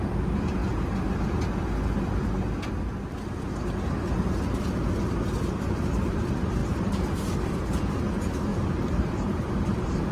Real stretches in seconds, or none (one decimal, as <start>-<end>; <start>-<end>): 0.0-6.6; 7.9-8.5